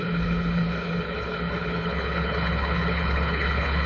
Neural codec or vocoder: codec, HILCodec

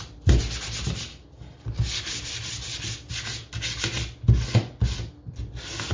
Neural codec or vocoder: none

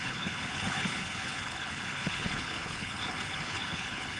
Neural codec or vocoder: codec, HILCodec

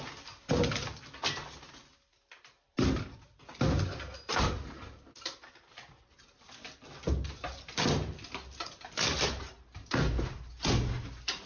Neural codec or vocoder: none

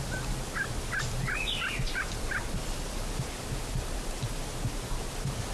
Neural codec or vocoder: none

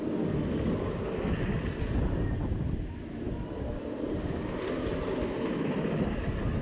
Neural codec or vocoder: none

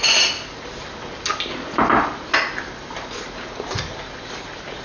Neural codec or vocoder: none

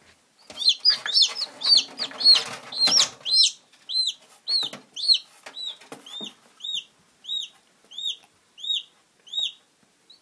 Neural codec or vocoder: none